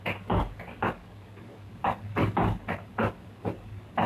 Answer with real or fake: fake